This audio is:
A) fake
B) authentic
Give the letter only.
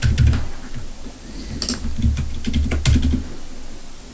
B